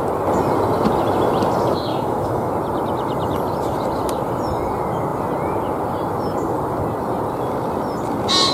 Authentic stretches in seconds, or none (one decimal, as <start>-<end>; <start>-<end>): 0.0-1.9; 2.5-8.5